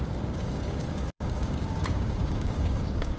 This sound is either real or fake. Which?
fake